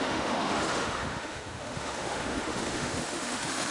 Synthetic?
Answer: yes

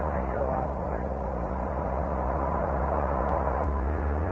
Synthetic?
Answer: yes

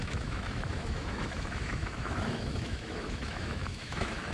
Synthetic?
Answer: yes